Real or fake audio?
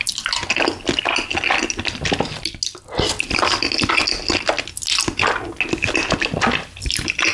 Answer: real